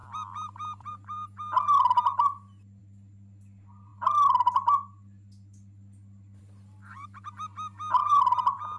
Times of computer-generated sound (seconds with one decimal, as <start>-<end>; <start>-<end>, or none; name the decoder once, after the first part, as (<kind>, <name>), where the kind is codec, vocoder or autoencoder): 0.0-0.9 (vocoder, BigVGAN v2); 8.0-8.8